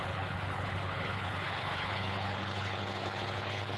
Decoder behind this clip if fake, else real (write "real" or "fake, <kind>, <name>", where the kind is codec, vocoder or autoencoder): fake, codec, HILCodec